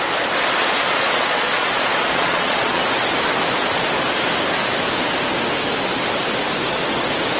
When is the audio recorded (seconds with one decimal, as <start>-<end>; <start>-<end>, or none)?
0.0-0.6; 2.8-7.4